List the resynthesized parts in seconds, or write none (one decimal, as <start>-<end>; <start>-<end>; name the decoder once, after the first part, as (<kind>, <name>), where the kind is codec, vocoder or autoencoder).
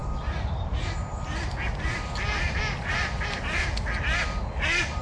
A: 0.0-1.2 (vocoder, BigVGAN v2)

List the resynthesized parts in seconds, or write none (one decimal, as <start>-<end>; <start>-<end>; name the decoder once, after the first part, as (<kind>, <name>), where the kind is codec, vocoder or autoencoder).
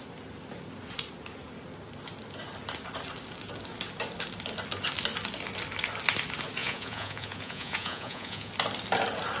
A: 6.6-8.5 (vocoder, Vocos)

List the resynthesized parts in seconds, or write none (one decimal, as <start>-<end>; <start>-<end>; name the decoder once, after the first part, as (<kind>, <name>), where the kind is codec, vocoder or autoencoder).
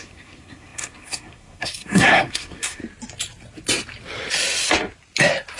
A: 0.0-2.8 (codec, SNAC)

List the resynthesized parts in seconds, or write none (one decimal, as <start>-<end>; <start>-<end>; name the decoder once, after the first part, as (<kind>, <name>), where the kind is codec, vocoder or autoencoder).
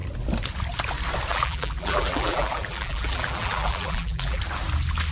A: 1.3-4.4 (vocoder, BigVGAN v2)